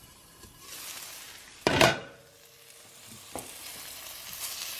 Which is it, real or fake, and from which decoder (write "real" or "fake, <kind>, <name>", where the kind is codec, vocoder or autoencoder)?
real